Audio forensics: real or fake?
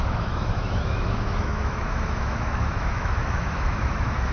fake